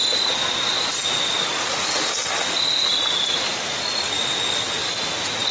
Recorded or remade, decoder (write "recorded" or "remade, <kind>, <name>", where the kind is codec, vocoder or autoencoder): recorded